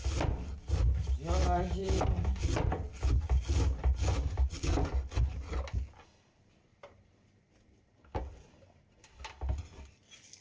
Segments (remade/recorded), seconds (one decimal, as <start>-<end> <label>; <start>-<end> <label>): 0.0-10.4 recorded